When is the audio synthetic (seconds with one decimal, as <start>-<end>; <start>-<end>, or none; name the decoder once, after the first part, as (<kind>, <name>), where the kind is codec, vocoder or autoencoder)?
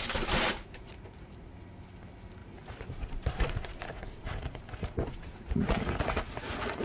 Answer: 0.5-1.5 (vocoder, Vocos); 2.4-6.8